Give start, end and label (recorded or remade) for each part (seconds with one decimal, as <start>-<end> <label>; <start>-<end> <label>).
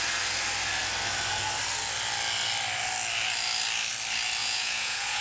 0.0-4.4 recorded; 4.4-5.2 remade